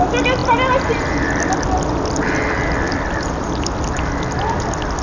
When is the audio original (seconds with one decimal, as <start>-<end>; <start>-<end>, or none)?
0.0-5.0